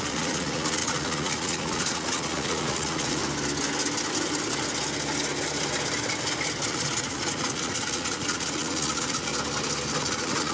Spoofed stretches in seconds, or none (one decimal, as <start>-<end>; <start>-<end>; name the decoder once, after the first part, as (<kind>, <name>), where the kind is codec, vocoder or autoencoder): 0.0-3.2 (vocoder, Vocos); 6.7-9.3; 10.0-10.5